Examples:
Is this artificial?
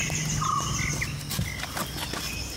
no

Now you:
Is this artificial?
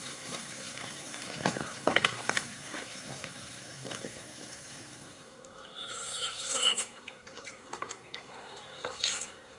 yes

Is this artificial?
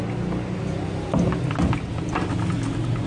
no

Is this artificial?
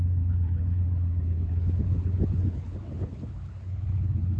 yes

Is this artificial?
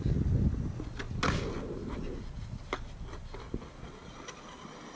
no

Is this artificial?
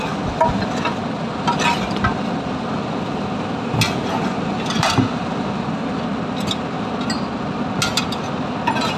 no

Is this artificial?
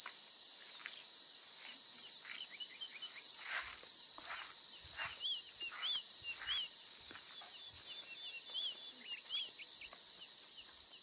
no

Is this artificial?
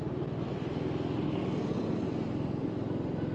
no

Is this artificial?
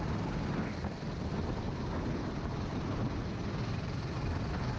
no